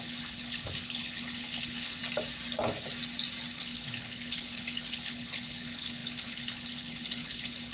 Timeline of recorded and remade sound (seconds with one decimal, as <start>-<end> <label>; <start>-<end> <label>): 0.0-2.0 remade; 2.0-3.6 recorded; 3.6-7.7 remade